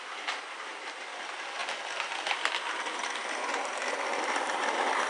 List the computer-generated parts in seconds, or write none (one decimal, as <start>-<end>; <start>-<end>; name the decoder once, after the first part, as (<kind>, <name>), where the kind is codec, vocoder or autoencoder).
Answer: none